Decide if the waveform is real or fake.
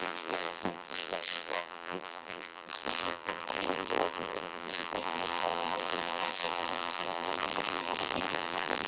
fake